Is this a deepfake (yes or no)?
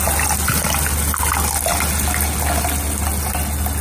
no